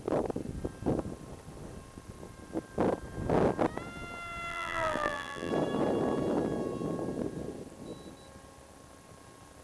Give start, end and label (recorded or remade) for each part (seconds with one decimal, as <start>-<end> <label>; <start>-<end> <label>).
0.0-4.5 recorded; 4.5-5.5 remade; 5.5-9.6 recorded